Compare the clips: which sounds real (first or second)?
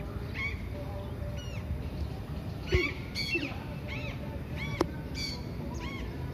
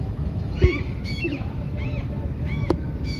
first